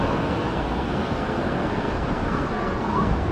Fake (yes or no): yes